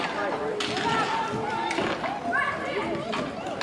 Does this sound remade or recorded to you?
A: recorded